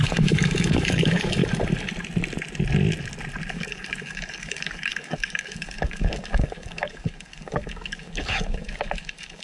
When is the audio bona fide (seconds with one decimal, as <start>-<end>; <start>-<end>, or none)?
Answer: 1.4-3.5